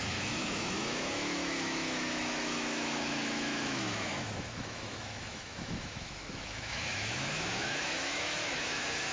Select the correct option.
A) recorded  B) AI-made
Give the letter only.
B